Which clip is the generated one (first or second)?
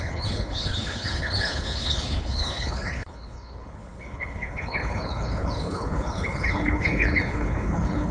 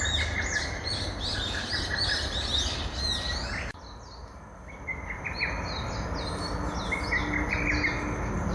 first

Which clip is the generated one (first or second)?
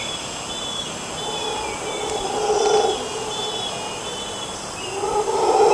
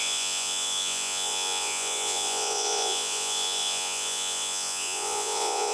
second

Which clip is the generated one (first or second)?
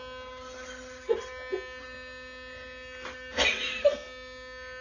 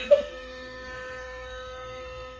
second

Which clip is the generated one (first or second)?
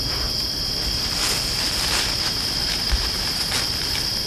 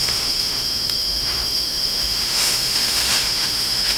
second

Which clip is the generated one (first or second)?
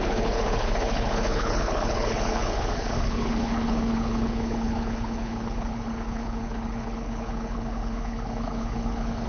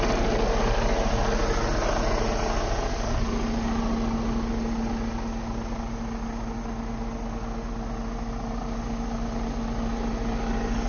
first